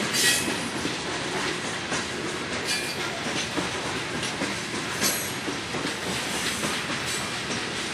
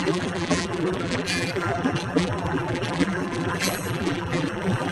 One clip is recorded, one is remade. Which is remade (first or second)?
second